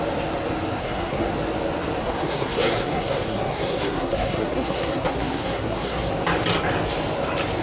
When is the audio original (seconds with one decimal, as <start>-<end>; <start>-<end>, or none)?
0.0-0.8; 1.3-2.0; 6.1-7.6